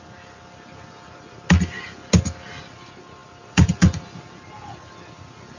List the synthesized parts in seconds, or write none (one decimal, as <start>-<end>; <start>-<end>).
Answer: 3.2-4.2